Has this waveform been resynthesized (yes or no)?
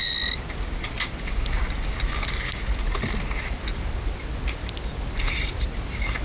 no